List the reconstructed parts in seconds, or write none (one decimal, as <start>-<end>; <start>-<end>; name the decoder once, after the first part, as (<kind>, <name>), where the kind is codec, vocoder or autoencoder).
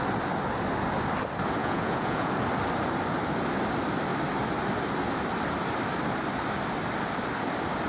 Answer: 1.6-2.3 (vocoder, Vocos)